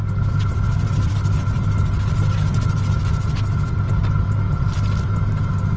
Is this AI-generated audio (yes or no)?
no